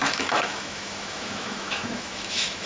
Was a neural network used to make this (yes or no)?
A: yes